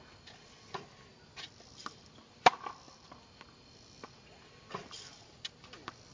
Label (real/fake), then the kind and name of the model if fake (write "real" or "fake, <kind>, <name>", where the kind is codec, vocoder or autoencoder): real